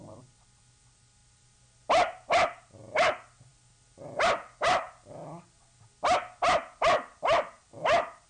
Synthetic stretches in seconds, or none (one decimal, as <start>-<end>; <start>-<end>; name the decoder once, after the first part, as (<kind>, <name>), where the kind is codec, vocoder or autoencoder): none